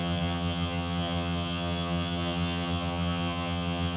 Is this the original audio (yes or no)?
no